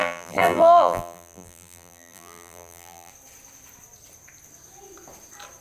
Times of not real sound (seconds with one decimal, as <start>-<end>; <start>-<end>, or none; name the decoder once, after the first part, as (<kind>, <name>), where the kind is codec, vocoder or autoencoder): 0.0-3.1 (vocoder, BigVGAN v2)